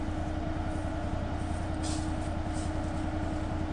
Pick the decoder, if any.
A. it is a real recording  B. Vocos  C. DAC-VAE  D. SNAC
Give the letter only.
A